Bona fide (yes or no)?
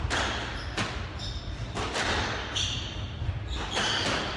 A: yes